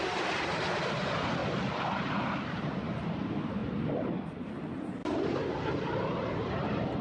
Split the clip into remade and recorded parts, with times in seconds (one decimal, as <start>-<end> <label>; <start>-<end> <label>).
0.0-1.4 remade; 1.4-2.2 recorded; 2.2-3.6 remade; 3.6-4.5 recorded; 4.5-7.0 remade